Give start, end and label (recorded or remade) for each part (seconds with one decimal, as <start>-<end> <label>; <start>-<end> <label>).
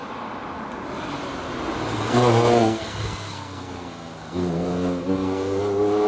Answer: 0.0-1.9 recorded; 1.9-5.6 remade; 5.6-6.1 recorded